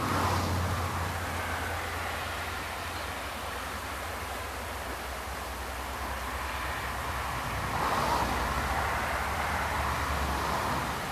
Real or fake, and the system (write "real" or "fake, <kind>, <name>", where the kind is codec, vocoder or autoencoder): real